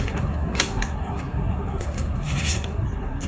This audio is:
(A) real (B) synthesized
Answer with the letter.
B